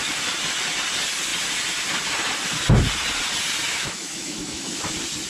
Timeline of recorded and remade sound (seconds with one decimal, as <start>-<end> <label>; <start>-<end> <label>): 0.0-3.7 recorded; 3.7-4.8 remade; 4.8-5.3 recorded